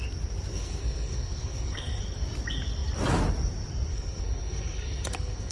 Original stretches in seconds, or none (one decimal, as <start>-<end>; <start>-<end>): 0.0-0.5; 2.0-3.9